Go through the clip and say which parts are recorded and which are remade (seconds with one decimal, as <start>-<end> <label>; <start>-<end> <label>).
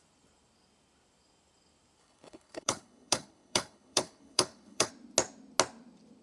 0.0-2.0 recorded; 2.0-4.9 remade; 4.9-6.2 recorded